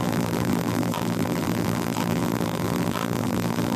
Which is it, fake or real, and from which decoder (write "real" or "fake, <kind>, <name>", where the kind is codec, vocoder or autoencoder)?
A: fake, vocoder, BigVGAN v2